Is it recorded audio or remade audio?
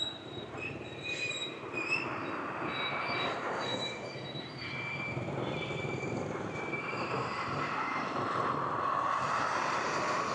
remade